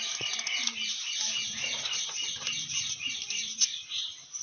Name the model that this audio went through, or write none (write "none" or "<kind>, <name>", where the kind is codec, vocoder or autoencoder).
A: vocoder, BigVGAN v2